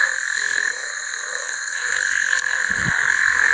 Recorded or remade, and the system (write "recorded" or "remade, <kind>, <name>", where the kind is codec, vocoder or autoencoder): remade, codec, SNAC